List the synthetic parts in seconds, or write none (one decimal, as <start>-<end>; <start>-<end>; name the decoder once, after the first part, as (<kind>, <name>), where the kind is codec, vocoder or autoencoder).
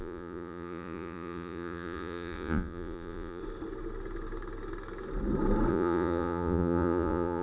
0.0-3.4 (vocoder, Vocos); 5.7-7.4